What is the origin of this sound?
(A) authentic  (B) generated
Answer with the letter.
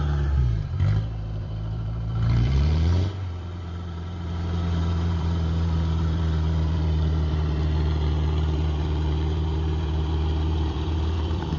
B